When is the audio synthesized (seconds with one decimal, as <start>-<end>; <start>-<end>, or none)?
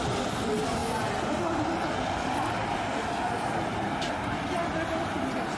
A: none